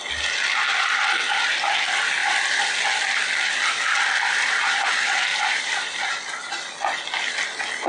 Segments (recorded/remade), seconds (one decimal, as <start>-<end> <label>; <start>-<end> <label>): 0.0-2.2 recorded; 2.2-4.8 remade; 4.8-5.3 recorded; 5.3-6.0 remade; 6.0-7.9 recorded